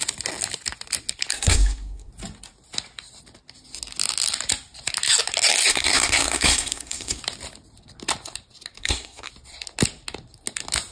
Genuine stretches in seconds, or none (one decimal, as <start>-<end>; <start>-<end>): 0.0-1.3; 2.1-5.7; 7.2-8.8; 9.3-10.9